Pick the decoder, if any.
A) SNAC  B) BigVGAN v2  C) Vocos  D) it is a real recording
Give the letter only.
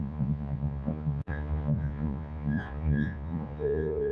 C